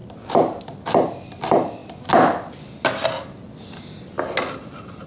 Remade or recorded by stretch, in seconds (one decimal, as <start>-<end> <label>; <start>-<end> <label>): 0.0-5.1 recorded